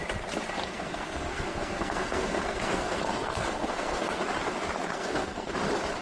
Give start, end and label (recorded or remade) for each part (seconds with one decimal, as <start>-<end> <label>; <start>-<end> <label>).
0.0-0.6 recorded; 0.6-4.2 remade; 4.2-4.9 recorded; 4.9-5.5 remade; 5.5-6.0 recorded

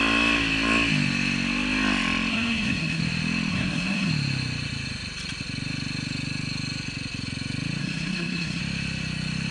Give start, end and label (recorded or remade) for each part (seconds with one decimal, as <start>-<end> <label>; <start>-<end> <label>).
0.0-2.3 recorded; 2.3-3.0 remade; 3.0-3.5 recorded; 3.5-4.1 remade; 4.1-7.8 recorded; 7.8-8.6 remade; 8.6-9.5 recorded

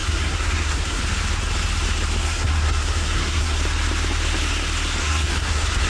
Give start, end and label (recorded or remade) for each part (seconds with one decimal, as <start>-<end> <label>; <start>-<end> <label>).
0.0-1.0 remade; 1.0-2.2 recorded; 2.2-3.6 remade; 3.6-5.0 recorded; 5.0-5.9 remade

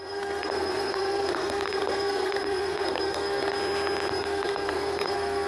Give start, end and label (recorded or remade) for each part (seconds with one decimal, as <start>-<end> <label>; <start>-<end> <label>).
0.0-3.6 remade; 3.6-4.1 recorded; 4.1-5.5 remade